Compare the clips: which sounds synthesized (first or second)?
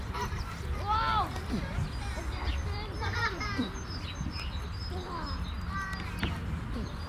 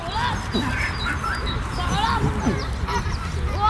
first